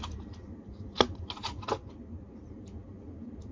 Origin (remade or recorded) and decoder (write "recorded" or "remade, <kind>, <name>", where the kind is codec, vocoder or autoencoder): recorded